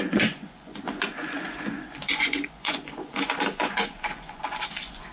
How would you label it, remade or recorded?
remade